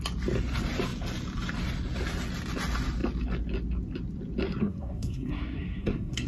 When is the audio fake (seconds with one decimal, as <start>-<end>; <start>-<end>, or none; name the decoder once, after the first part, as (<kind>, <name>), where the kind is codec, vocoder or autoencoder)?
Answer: 4.6-6.3 (codec, SNAC)